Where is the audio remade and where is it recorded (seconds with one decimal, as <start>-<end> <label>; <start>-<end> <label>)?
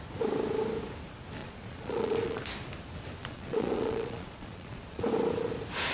0.0-1.4 recorded; 1.4-2.4 remade; 2.4-3.2 recorded; 3.2-5.1 remade; 5.1-5.9 recorded